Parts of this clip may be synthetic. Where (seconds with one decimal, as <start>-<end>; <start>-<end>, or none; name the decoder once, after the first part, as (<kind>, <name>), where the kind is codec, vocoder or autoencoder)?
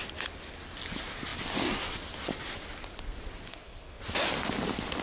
3.5-4.0 (codec, SNAC)